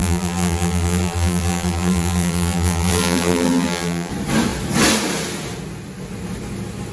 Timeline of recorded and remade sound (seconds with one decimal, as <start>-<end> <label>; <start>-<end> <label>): 0.0-4.1 remade; 4.1-6.9 recorded